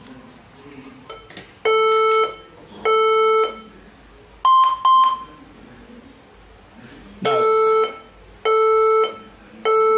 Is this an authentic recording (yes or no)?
yes